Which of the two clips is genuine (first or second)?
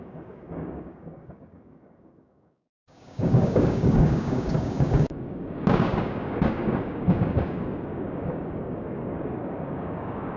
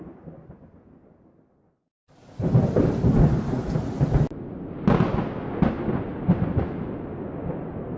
second